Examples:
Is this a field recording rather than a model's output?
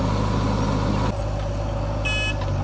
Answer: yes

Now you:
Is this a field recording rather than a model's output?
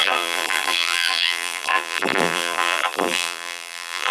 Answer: no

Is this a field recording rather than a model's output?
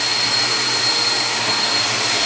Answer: no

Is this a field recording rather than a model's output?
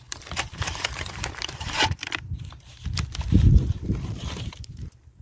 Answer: no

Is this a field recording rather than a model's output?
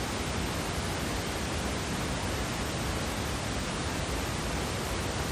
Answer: yes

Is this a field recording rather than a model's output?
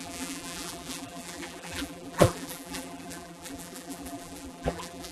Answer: no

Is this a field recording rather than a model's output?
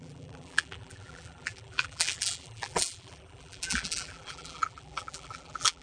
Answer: no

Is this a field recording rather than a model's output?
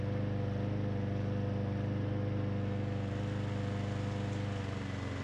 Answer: yes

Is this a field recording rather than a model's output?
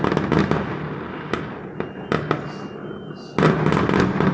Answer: yes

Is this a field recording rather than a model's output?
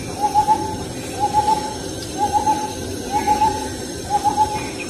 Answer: no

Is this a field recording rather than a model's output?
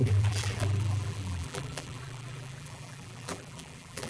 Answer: no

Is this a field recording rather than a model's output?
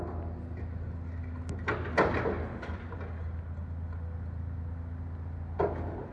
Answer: yes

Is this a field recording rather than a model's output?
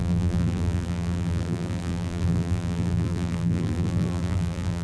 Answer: no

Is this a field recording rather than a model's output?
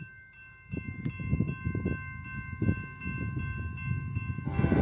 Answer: yes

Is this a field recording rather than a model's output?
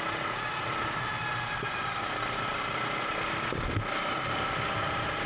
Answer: yes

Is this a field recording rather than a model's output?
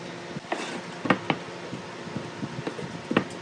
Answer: yes